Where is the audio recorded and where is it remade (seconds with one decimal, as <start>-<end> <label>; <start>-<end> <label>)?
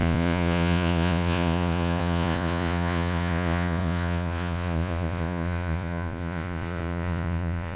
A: 0.0-7.8 remade